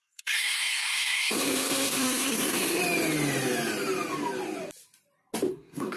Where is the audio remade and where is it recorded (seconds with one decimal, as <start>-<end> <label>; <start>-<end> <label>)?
0.0-2.8 remade; 2.8-5.5 recorded; 5.5-6.0 remade